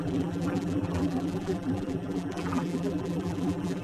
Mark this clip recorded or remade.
remade